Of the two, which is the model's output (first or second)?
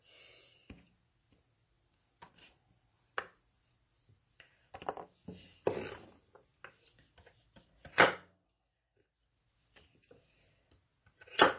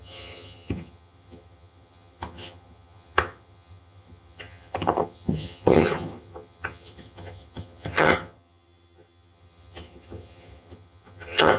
second